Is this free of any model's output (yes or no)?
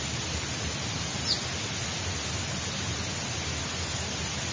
yes